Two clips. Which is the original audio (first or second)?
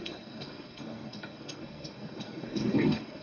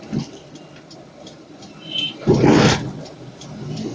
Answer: second